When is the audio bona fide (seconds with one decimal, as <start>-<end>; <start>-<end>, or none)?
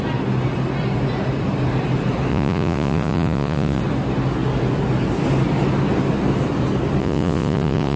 0.0-2.3; 3.8-7.0